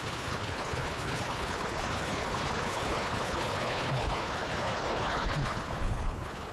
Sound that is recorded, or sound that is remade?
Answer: remade